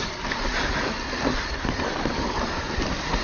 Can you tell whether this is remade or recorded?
recorded